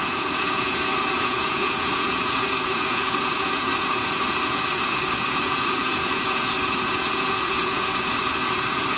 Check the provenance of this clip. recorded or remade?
remade